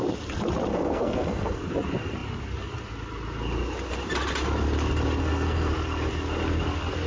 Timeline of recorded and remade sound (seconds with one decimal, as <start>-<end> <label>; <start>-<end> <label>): 0.0-0.7 recorded; 0.7-1.6 remade; 1.6-5.2 recorded; 5.2-5.7 remade; 5.7-7.1 recorded

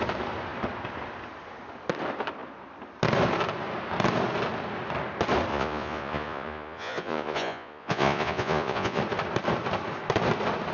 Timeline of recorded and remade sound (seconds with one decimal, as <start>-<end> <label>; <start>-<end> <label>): 0.0-5.5 recorded; 5.5-9.0 remade; 9.0-10.7 recorded

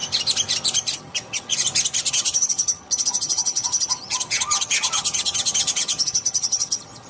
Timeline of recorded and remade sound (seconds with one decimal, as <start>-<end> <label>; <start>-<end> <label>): 0.0-1.0 recorded; 1.0-1.5 remade; 1.5-2.1 recorded; 2.1-7.1 remade

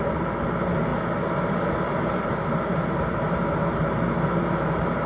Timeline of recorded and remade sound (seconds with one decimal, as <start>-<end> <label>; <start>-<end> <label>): 0.0-5.1 recorded

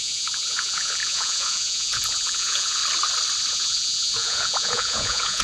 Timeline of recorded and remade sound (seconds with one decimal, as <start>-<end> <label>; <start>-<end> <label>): 0.0-2.8 remade; 2.8-3.5 recorded; 3.5-5.4 remade